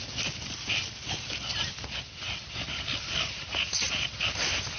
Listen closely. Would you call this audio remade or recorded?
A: recorded